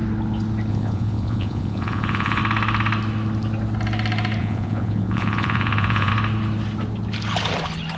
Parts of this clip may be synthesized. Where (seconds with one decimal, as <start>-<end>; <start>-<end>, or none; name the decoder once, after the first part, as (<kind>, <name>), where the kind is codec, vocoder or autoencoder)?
0.7-2.4 (vocoder, Vocos); 4.4-6.1